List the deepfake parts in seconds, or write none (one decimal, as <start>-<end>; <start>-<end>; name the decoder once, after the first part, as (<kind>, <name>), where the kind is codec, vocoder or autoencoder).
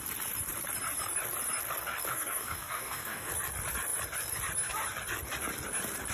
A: 2.1-3.3 (codec, DAC)